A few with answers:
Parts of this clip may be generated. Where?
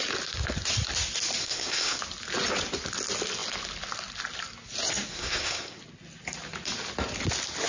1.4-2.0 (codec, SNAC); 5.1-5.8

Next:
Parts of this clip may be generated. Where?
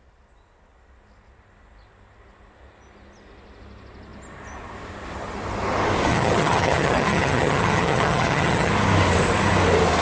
6.1-8.7 (vocoder, HiFi-GAN)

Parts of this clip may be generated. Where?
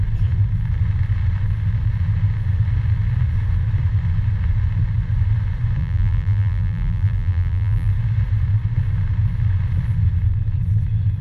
5.8-7.9 (vocoder, BigVGAN v2)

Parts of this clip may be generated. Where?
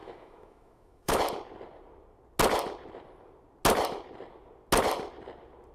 0.0-1.2 (autoencoder, DAC-VAE)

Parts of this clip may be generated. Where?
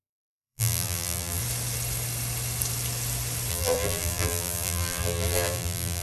0.0-1.4 (vocoder, BigVGAN v2); 3.5-6.0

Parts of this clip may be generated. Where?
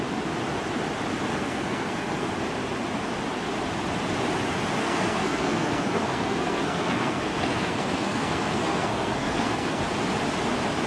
1.3-2.3 (codec, SNAC); 4.8-9.8